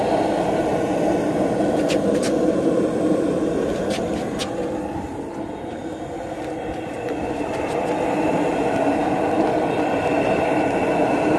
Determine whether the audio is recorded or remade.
recorded